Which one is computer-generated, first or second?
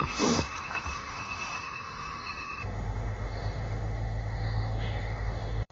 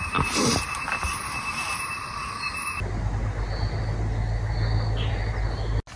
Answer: first